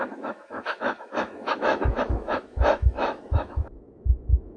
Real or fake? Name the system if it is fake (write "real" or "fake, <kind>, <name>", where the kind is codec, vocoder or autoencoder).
fake, autoencoder, DAC-VAE